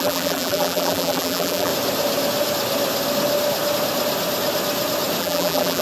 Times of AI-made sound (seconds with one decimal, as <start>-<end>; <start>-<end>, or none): 0.0-1.7; 5.2-5.8